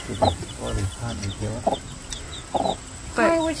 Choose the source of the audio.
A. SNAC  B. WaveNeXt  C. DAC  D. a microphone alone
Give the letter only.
D